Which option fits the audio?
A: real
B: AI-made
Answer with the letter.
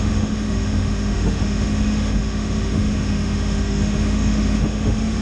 B